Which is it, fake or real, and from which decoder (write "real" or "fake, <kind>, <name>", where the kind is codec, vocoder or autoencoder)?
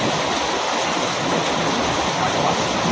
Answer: real